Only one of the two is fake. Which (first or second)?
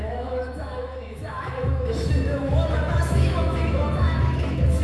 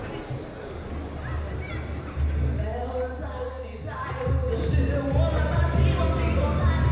first